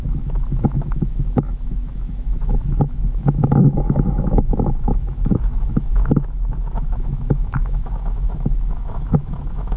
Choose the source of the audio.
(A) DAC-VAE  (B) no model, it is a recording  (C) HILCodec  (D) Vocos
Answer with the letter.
A